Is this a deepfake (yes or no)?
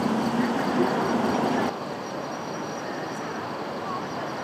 no